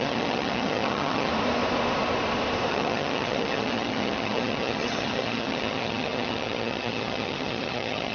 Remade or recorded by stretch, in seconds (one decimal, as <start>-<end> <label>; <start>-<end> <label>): 0.0-1.3 remade; 1.3-2.7 recorded; 2.7-8.1 remade